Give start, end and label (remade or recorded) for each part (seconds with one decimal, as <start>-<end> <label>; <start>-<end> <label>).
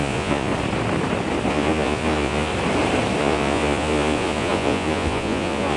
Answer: 0.0-0.5 remade; 0.5-1.5 recorded; 1.5-2.5 remade; 2.5-3.2 recorded; 3.2-5.8 remade